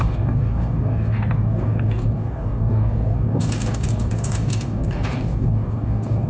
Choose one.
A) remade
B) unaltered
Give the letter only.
A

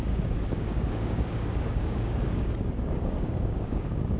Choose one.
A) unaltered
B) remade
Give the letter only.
B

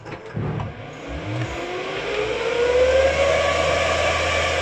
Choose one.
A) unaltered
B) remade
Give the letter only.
A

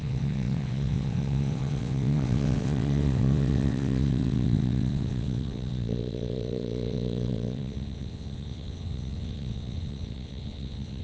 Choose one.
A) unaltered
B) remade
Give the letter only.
B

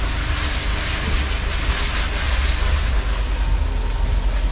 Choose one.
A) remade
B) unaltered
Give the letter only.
B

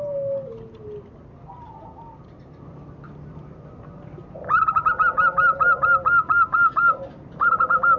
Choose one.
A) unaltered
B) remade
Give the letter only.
A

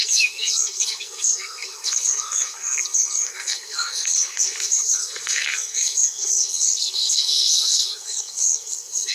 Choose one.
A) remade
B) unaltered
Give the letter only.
A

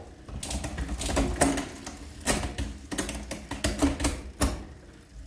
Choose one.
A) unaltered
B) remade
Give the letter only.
A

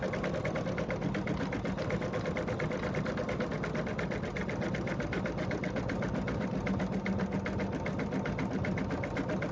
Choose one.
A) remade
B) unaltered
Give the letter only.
B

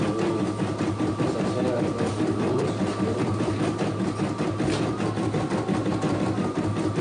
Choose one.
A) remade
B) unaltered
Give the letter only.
B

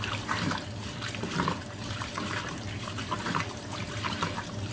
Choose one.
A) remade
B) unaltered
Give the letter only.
A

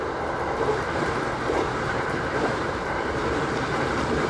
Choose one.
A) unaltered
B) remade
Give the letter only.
B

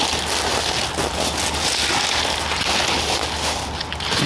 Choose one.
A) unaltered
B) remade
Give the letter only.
A